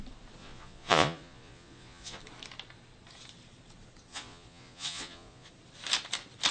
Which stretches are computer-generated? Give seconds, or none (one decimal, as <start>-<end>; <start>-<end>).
0.4-2.2; 4.1-5.5